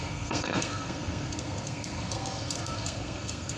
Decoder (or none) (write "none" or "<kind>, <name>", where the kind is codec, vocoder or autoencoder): codec, SNAC